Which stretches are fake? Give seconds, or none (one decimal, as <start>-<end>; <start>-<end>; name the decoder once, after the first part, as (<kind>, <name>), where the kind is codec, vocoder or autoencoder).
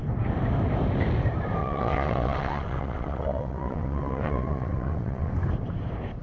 1.6-5.3 (vocoder, WaveNeXt)